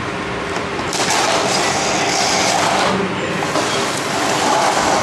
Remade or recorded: recorded